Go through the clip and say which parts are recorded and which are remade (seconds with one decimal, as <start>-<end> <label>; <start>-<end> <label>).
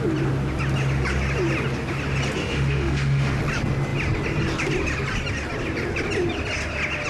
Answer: 0.0-2.4 recorded; 2.4-3.4 remade; 3.4-7.1 recorded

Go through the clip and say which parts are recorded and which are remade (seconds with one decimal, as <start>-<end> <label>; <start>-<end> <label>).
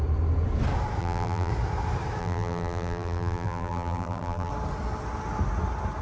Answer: 0.0-1.0 recorded; 1.0-1.5 remade; 1.5-2.2 recorded; 2.2-4.5 remade; 4.5-6.0 recorded